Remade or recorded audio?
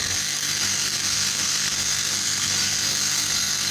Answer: remade